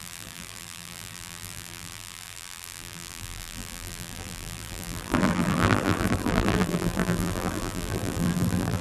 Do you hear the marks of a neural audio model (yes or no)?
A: yes